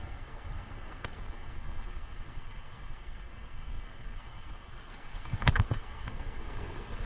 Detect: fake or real fake